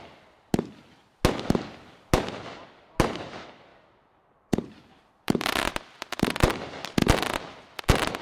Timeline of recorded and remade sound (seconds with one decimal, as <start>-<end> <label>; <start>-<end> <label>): 0.0-3.7 recorded; 3.7-6.5 remade; 6.5-7.0 recorded; 7.0-8.2 remade